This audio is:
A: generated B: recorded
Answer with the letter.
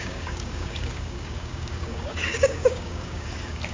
A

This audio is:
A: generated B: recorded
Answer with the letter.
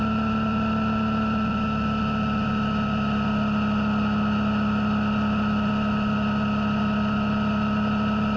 B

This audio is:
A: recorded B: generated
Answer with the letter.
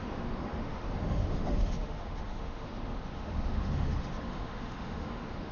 B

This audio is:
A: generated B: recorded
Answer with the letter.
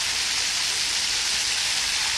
B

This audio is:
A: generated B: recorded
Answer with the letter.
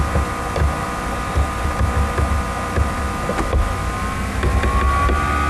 B